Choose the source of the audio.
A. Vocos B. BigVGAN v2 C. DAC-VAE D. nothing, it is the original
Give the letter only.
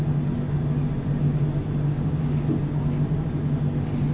D